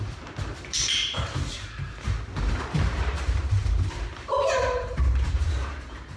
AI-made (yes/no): yes